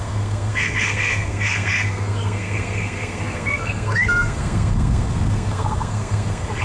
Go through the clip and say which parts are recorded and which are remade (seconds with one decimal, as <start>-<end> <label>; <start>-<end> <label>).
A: 0.0-6.6 remade